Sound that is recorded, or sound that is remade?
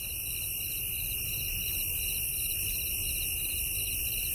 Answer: remade